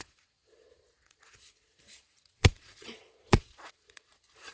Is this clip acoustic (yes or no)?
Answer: no